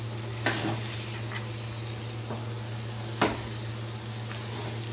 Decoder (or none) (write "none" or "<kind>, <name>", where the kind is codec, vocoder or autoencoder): none